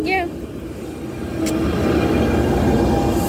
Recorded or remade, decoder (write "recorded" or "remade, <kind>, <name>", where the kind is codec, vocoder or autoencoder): recorded